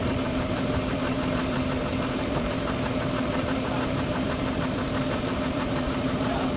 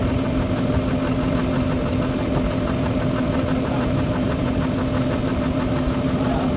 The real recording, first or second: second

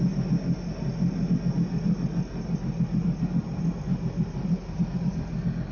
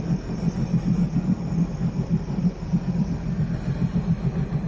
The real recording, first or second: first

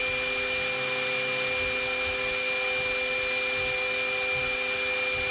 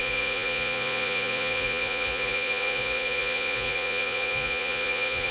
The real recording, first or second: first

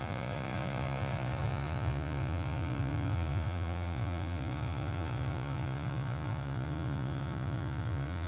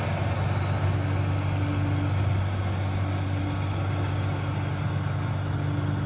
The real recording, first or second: second